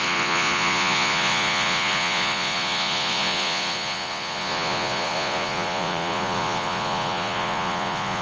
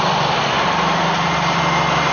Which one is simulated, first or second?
first